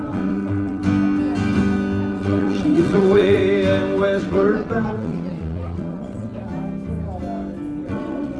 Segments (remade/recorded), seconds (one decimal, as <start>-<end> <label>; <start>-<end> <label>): 0.0-0.8 remade; 0.8-2.1 recorded; 2.1-3.4 remade; 3.4-4.2 recorded; 4.2-6.3 remade; 6.3-7.8 recorded; 7.8-8.4 remade